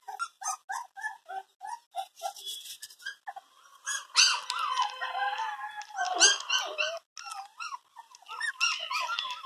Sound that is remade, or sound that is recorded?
recorded